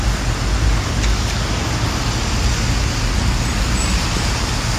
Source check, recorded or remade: recorded